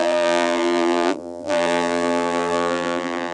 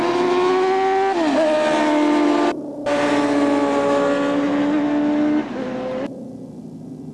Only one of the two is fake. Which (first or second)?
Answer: first